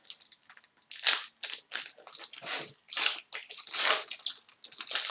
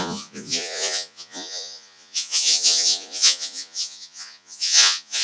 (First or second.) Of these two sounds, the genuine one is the first